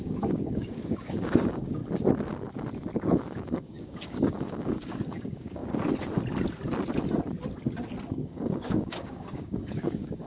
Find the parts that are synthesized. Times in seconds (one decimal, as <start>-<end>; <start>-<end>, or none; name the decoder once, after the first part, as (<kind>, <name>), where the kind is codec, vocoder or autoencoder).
0.0-1.8 (codec, DAC); 3.2-5.6; 8.1-10.3